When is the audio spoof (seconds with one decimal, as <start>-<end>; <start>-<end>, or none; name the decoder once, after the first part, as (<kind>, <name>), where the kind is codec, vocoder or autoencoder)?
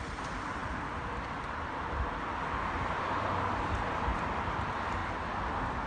0.0-0.6 (vocoder, BigVGAN v2); 3.0-5.0; 5.5-5.9